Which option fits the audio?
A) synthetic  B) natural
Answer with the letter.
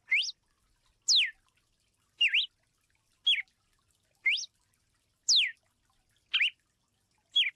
B